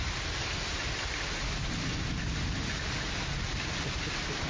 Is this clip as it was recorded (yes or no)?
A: yes